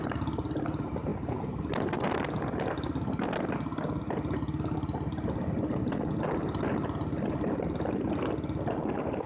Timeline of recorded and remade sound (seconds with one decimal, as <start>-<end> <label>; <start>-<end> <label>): 0.0-9.3 recorded